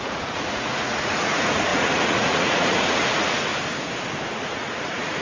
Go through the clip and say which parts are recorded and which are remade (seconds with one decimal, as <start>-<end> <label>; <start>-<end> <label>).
0.0-3.5 remade; 3.5-4.4 recorded; 4.4-5.2 remade